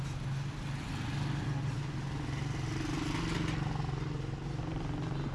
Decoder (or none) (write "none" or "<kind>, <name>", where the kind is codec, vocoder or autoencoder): none